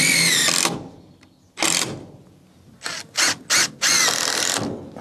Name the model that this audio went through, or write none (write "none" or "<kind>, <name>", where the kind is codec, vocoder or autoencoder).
none